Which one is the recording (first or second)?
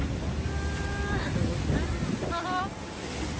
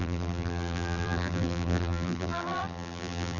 first